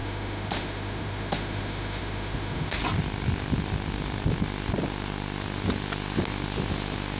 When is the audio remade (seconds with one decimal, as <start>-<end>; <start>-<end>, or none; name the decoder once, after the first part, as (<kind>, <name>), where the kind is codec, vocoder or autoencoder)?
0.0-2.8 (autoencoder, DAC-VAE)